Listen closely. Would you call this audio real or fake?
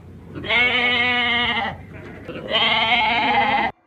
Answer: real